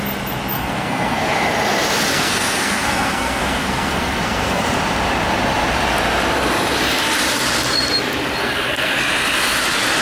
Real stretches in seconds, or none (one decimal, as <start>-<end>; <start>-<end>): 0.0-0.5; 1.3-2.1; 4.6-8.4; 9.0-10.0